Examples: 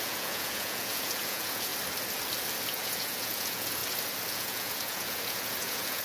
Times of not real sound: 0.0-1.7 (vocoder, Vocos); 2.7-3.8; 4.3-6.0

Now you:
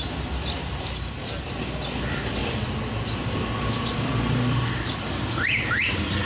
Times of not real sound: none

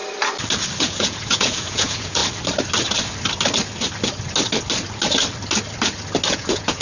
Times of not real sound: 0.8-2.2 (vocoder, Vocos); 6.3-6.8

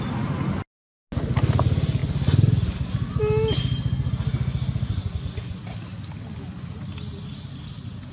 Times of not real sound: none

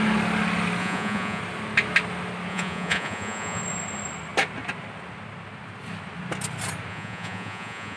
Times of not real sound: 0.8-1.4 (vocoder, Vocos); 2.5-3.6; 6.9-8.0